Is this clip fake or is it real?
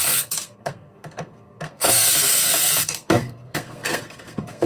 fake